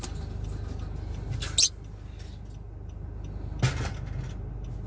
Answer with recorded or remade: recorded